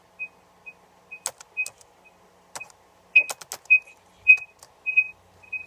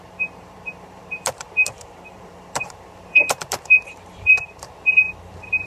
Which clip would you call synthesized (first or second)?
second